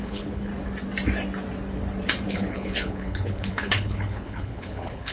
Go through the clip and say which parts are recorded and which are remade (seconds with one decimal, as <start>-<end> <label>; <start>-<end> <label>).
0.0-0.5 remade; 0.5-2.3 recorded; 2.3-5.1 remade